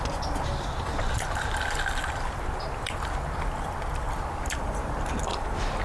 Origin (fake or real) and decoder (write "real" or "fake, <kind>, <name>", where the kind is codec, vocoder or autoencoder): fake, vocoder, BigVGAN v2